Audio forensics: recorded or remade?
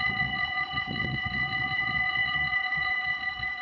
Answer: remade